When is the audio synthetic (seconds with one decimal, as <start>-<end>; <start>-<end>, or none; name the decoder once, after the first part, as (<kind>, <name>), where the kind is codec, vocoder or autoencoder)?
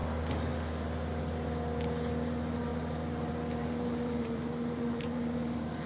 2.7-5.9 (vocoder, BigVGAN v2)